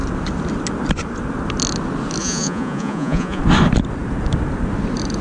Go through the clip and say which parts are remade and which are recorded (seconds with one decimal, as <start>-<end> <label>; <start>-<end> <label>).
0.0-2.2 recorded; 2.2-3.4 remade; 3.4-5.2 recorded

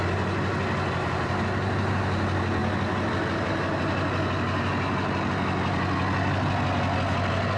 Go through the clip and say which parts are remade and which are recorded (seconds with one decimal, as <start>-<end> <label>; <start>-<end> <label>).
0.0-7.6 recorded

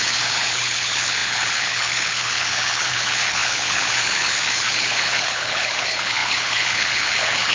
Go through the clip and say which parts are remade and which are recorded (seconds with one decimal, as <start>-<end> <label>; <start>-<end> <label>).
0.0-7.5 remade

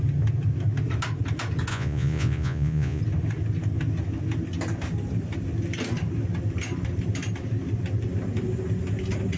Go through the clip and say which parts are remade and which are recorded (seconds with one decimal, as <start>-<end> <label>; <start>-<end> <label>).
0.0-1.7 recorded; 1.7-3.0 remade; 3.0-9.4 recorded

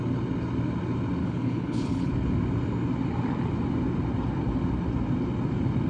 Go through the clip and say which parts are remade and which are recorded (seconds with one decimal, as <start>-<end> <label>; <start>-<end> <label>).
0.0-1.2 recorded; 1.2-2.1 remade; 2.1-5.9 recorded

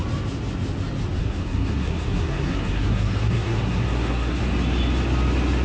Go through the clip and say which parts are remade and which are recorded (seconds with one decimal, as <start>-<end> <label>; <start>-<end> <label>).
0.0-1.2 recorded; 1.2-4.4 remade; 4.4-5.6 recorded